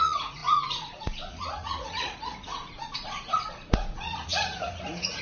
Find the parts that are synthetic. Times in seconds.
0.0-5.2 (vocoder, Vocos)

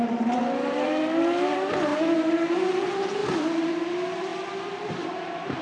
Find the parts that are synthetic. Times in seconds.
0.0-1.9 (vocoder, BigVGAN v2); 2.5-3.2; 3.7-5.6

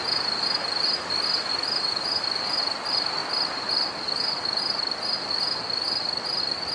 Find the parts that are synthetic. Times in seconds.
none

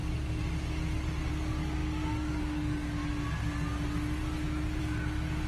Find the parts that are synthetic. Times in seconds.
1.3-3.0 (codec, DAC); 4.8-5.5

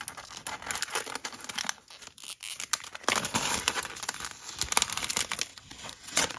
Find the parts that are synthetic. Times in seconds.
5.5-6.4 (vocoder, WaveNeXt)

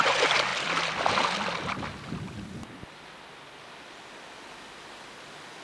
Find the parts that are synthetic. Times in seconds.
none

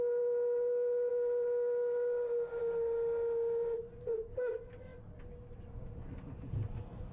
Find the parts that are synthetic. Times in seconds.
none